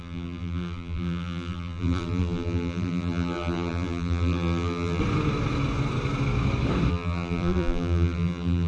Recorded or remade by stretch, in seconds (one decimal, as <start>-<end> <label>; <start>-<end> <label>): 0.0-5.0 remade; 5.0-6.9 recorded; 6.9-8.7 remade